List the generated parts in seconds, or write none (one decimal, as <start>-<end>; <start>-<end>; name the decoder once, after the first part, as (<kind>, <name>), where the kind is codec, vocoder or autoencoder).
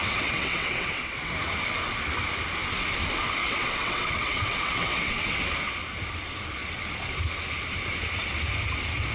0.0-1.3 (vocoder, WaveNeXt); 3.4-5.4